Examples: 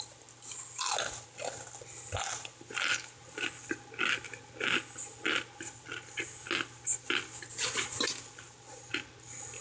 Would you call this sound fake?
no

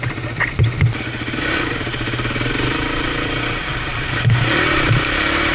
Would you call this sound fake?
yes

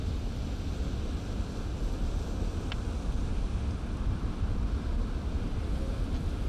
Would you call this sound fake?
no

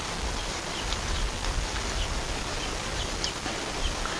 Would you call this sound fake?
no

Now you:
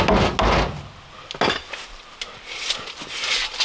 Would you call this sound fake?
no